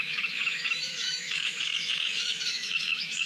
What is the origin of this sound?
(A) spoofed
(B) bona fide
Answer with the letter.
A